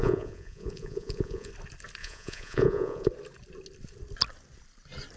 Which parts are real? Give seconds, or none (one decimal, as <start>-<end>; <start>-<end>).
1.5-2.0; 3.1-5.2